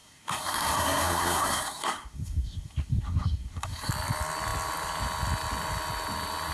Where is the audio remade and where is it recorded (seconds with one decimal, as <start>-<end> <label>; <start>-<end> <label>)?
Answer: 0.0-3.9 remade; 3.9-6.5 recorded